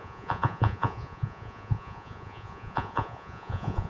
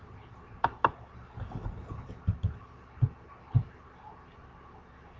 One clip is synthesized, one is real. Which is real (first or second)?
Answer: second